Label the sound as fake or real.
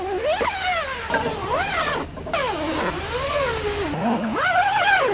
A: real